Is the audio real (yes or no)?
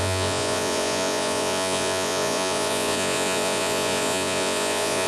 no